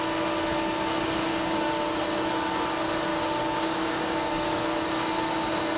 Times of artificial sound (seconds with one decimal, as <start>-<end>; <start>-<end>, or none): 1.3-2.0; 3.1-4.9